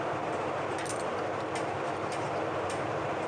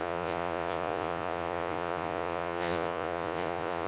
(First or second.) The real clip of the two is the first